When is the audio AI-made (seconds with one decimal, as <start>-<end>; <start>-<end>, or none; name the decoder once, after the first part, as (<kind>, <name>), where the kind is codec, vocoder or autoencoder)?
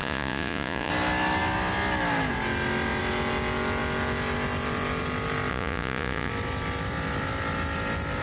0.0-0.9 (vocoder, Vocos); 5.5-6.3